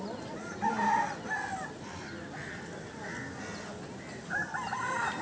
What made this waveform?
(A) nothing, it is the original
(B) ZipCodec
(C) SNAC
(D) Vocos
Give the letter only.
A